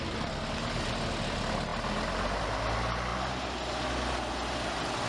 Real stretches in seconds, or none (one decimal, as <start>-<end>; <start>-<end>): 0.0-5.1

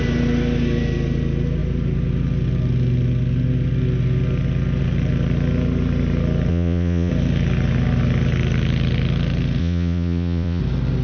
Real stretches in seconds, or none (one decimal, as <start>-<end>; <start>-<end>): 0.0-6.5; 7.1-9.6; 10.6-11.0

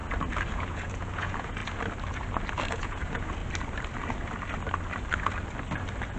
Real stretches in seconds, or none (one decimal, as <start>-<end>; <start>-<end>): 0.0-0.5; 1.6-2.7; 3.4-6.2

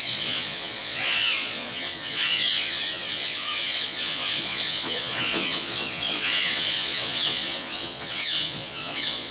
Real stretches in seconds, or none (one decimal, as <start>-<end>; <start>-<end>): none

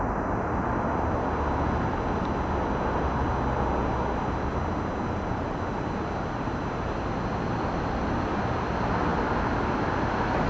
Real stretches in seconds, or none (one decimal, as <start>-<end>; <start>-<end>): 0.0-10.5

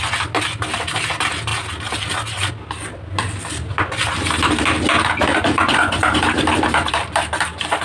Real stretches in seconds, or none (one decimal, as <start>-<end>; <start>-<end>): 0.0-5.3; 6.0-7.8

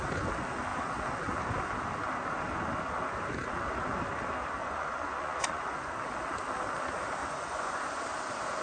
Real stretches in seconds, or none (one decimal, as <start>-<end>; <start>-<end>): 0.0-4.6; 5.9-7.2; 8.0-8.6